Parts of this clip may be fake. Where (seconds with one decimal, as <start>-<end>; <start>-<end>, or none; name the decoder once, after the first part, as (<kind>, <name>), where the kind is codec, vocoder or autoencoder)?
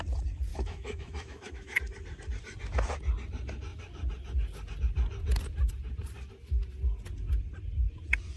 0.5-1.8 (autoencoder, DAC-VAE)